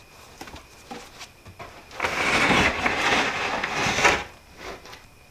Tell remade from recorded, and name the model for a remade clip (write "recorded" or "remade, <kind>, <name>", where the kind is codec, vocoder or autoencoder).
recorded